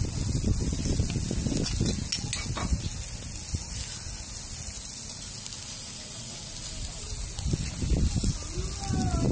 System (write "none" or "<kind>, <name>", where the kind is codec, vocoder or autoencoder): none